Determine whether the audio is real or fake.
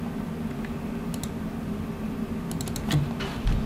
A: real